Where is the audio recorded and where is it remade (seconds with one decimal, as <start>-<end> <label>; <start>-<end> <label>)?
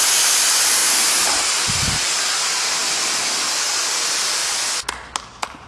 0.0-5.7 recorded